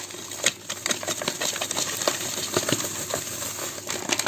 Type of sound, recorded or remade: recorded